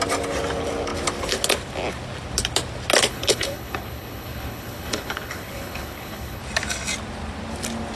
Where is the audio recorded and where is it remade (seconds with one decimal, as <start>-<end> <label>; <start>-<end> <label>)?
0.0-3.1 recorded; 3.1-6.4 remade; 6.4-8.0 recorded